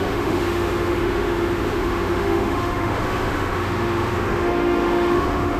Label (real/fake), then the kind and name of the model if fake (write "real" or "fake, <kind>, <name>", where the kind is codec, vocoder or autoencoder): fake, autoencoder, DAC-VAE